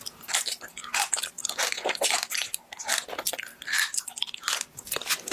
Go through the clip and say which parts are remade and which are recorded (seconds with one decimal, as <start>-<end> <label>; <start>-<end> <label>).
0.0-1.4 recorded; 1.4-4.6 remade; 4.6-5.3 recorded